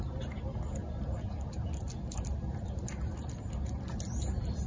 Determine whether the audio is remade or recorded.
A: recorded